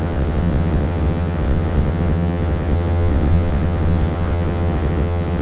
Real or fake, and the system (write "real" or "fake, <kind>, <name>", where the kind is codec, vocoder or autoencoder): fake, vocoder, WaveNeXt